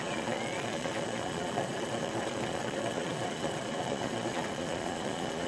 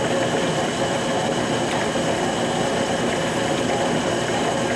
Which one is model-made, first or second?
first